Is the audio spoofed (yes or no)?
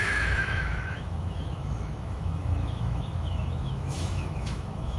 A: yes